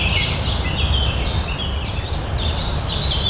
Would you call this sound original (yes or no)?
yes